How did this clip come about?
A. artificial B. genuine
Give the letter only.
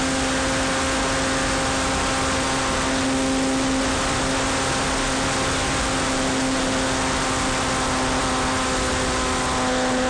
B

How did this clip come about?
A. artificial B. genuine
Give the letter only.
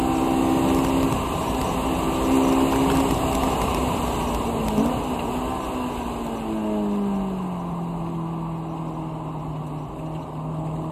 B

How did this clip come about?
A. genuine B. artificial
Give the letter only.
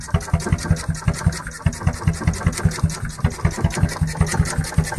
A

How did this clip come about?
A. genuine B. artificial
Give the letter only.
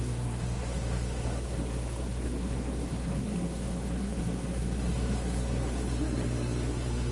B